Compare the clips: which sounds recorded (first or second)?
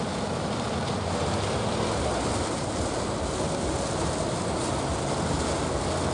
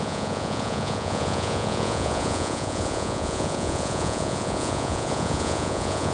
first